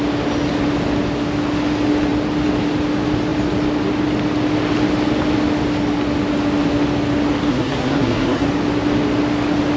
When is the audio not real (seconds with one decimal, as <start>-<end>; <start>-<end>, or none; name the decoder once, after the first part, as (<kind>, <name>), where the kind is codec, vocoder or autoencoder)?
7.5-8.5 (codec, SNAC)